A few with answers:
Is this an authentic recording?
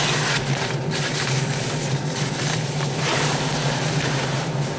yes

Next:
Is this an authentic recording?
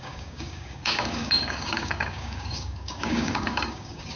no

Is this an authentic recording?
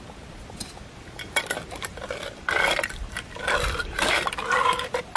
no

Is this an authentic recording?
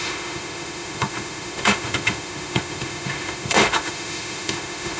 no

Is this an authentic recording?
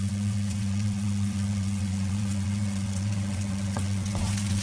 no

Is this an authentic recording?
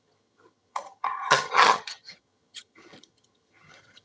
no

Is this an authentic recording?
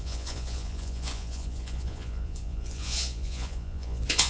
no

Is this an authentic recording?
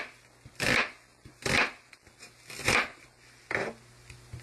yes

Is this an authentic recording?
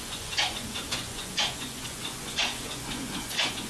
no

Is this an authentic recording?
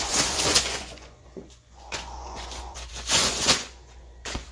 no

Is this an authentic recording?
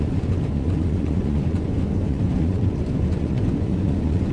no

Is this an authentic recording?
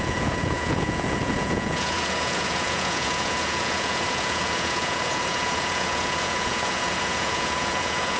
no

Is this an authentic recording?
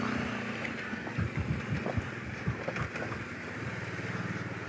yes